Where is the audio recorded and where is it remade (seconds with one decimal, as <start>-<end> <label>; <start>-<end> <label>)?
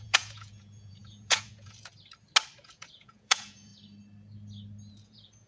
0.0-1.9 remade; 1.9-2.6 recorded; 2.6-3.7 remade; 3.7-4.9 recorded; 4.9-5.5 remade